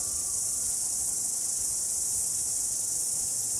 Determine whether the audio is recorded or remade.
recorded